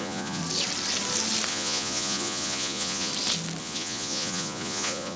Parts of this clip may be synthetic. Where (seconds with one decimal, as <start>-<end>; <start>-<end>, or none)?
0.0-0.4; 1.5-3.1; 3.6-5.2